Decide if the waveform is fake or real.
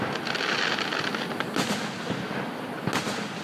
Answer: real